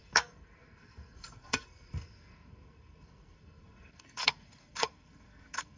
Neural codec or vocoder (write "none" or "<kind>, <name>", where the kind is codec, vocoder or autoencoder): codec, SNAC